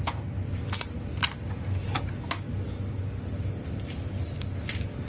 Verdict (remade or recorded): recorded